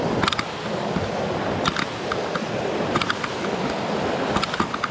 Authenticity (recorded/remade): remade